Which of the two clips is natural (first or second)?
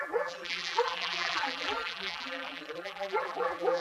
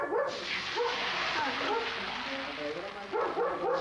second